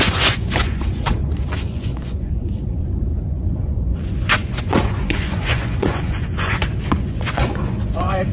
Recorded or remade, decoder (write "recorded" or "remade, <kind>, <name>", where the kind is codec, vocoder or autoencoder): remade, vocoder, Vocos